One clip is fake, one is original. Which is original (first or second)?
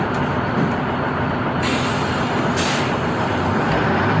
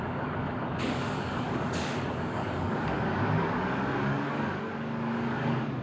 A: first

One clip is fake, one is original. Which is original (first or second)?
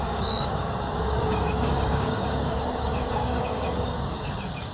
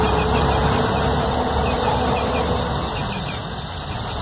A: second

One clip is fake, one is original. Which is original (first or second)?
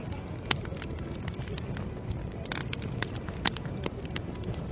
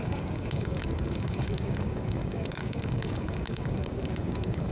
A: first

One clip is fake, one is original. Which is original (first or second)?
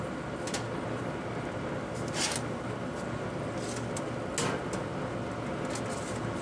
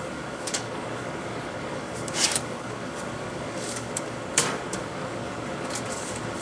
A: first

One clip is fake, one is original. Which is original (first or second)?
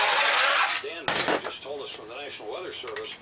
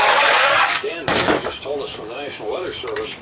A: first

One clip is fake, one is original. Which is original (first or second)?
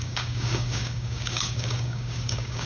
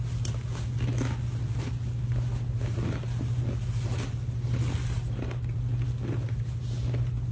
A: second